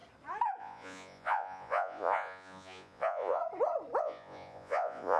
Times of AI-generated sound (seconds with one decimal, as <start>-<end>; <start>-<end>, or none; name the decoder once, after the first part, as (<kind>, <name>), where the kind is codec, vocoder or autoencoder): 0.6-3.4 (vocoder, Vocos); 4.0-5.2